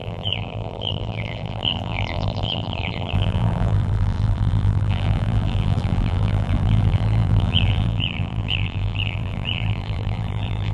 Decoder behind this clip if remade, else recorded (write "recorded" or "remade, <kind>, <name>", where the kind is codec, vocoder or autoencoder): remade, vocoder, BigVGAN v2